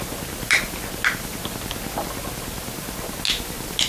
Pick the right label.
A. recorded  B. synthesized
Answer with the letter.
A